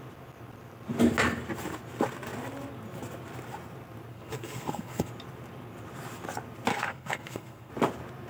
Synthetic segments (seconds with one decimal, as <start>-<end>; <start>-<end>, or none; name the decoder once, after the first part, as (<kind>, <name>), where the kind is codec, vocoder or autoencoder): 4.1-5.1 (codec, SNAC); 6.7-7.7